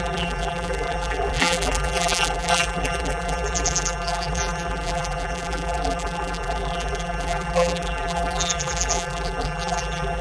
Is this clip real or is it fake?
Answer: fake